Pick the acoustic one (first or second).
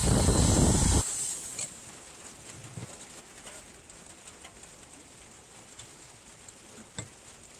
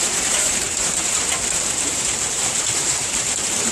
first